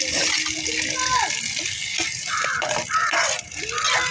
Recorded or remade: recorded